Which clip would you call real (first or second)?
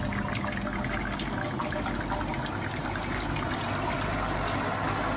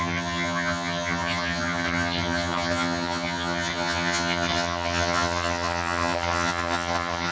first